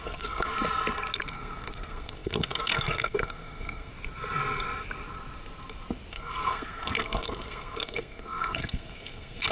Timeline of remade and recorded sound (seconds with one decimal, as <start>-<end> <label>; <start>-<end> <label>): 0.0-0.5 remade; 0.5-1.3 recorded; 1.3-3.9 remade; 3.9-6.1 recorded; 6.1-9.5 remade